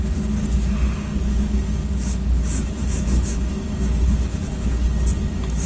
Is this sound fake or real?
fake